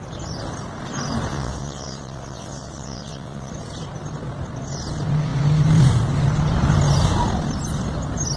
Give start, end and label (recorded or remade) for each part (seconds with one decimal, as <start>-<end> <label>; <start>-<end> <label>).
0.0-1.3 recorded; 1.3-3.5 remade; 3.5-8.4 recorded